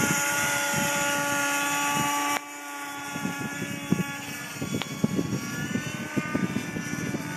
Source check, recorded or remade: recorded